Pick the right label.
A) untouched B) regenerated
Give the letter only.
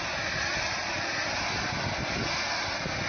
A